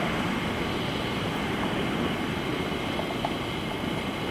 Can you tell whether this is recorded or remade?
recorded